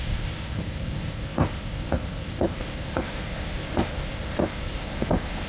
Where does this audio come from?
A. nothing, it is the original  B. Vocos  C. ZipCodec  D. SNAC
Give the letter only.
C